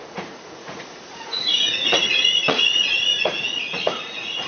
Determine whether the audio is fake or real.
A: fake